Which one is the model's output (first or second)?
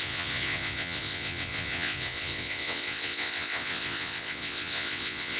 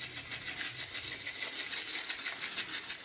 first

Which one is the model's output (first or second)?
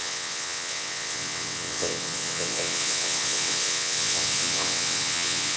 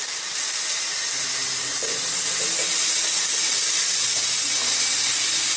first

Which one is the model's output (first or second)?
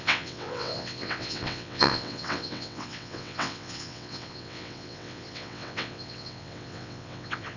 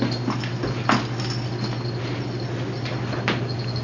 first